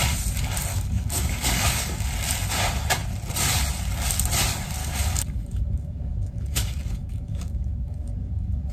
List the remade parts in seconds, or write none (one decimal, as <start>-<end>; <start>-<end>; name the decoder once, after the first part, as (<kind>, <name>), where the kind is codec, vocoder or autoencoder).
0.7-2.0 (codec, DAC); 4.8-8.7